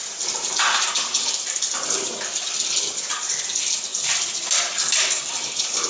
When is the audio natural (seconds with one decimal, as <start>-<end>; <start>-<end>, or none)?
0.0-5.9